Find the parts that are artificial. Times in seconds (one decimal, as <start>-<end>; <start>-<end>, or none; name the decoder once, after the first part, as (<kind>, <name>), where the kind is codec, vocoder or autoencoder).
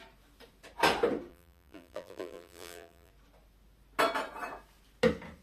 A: 1.3-3.1 (vocoder, BigVGAN v2)